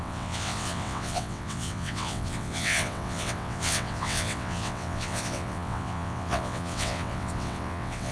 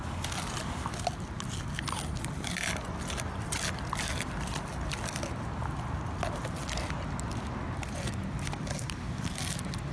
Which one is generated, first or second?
first